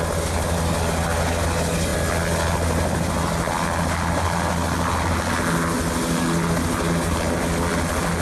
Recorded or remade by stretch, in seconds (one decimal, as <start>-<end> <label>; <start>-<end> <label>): 0.0-8.2 recorded